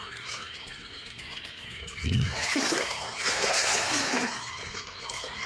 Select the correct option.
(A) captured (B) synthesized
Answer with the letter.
B